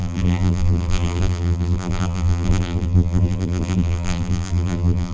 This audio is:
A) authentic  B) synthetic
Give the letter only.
B